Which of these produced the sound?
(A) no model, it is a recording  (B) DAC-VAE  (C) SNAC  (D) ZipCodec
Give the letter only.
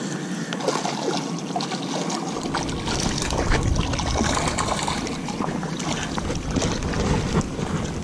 A